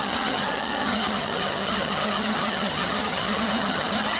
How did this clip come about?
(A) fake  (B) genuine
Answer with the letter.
A